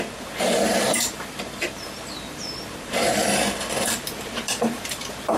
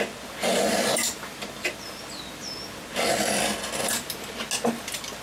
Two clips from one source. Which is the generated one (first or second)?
first